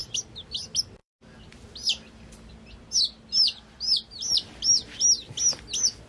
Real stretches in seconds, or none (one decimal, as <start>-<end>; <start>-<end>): 0.0-1.0; 2.5-6.1